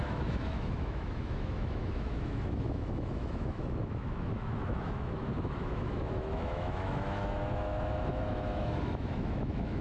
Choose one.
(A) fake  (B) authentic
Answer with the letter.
A